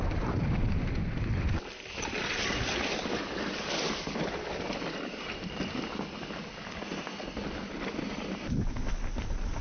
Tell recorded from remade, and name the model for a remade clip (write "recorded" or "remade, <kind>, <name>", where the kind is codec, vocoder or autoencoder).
remade, vocoder, BigVGAN v2